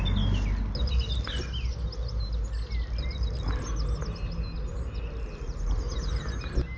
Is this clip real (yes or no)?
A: yes